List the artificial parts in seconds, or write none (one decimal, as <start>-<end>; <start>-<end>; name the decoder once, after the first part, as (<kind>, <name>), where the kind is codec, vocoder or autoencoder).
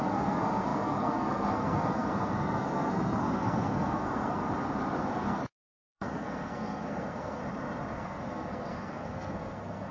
0.0-4.4 (codec, SNAC); 5.0-7.4; 7.9-9.9